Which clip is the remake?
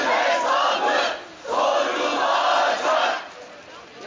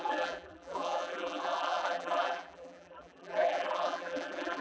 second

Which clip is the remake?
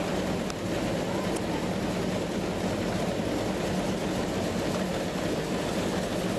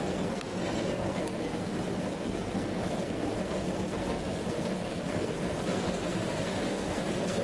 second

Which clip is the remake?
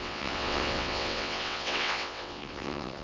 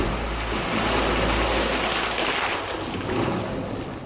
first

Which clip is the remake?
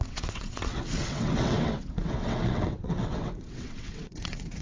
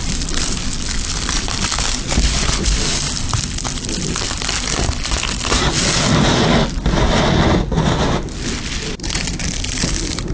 first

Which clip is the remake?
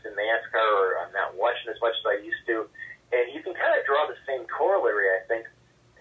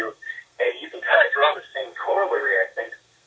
second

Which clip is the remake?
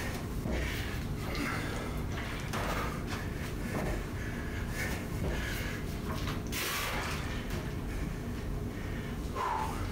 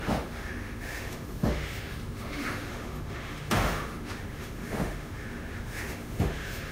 second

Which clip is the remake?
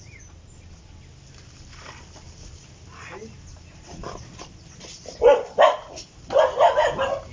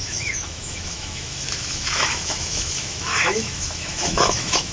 second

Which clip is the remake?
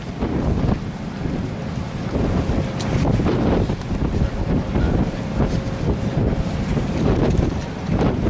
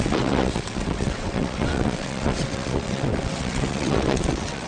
second